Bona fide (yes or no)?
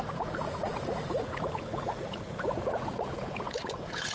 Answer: no